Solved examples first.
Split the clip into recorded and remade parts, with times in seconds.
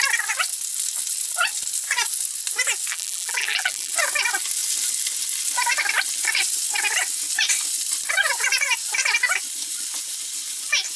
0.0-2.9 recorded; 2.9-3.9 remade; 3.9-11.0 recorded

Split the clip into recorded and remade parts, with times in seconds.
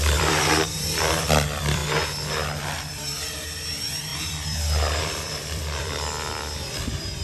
0.0-1.8 remade; 1.8-2.8 recorded; 2.8-7.2 remade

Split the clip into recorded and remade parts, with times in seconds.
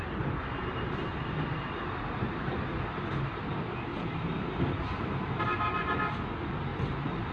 0.0-0.6 recorded; 0.6-1.2 remade; 1.2-3.9 recorded; 3.9-5.9 remade; 5.9-7.3 recorded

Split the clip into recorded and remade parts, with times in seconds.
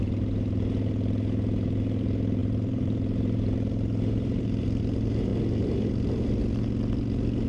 0.0-2.4 recorded; 2.4-4.8 remade; 4.8-7.5 recorded